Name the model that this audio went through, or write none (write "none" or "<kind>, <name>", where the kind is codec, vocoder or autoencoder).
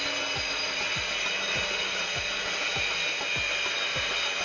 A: none